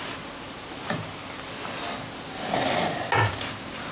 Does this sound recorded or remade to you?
recorded